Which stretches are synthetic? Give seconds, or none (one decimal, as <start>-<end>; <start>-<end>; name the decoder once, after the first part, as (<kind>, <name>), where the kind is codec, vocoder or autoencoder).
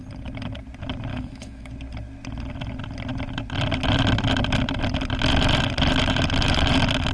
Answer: 1.1-1.7 (autoencoder, DAC-VAE)